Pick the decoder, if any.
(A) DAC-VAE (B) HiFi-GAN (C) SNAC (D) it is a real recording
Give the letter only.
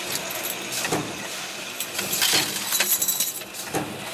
D